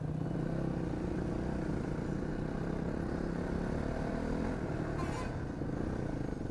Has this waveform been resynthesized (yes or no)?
no